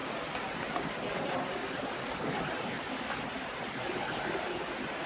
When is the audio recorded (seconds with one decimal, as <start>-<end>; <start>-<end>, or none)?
0.0-0.9